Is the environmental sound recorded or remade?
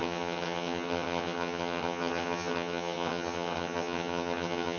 remade